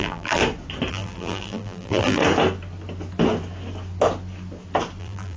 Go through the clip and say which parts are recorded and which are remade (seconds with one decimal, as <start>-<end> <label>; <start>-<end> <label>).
0.0-0.4 remade; 0.4-0.9 recorded; 0.9-2.2 remade; 2.2-5.0 recorded; 5.0-5.4 remade